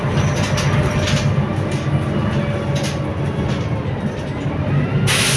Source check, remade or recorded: recorded